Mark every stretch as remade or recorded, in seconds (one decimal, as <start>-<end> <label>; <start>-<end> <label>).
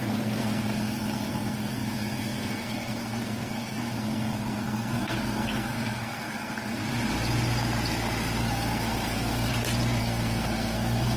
0.0-6.8 remade; 6.8-8.4 recorded; 8.4-9.5 remade; 9.5-10.0 recorded; 10.0-11.2 remade